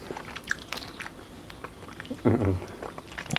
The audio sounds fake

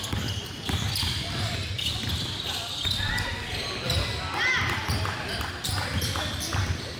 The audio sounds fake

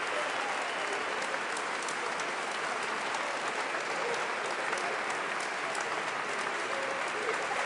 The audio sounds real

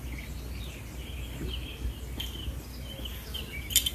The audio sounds real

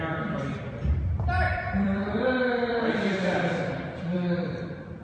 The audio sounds fake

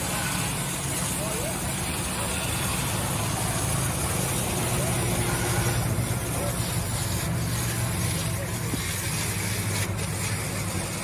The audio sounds real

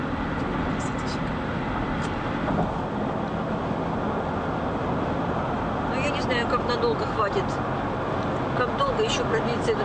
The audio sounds real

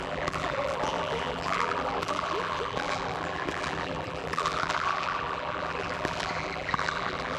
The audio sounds fake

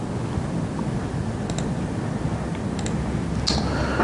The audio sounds real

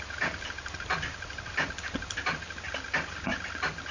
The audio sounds fake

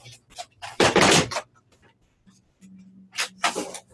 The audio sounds fake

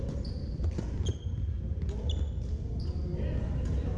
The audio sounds real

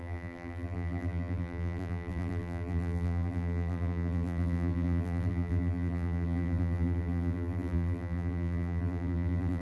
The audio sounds fake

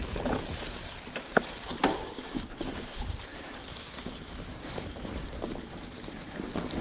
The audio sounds fake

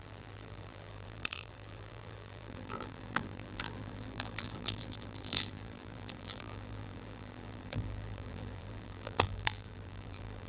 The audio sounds fake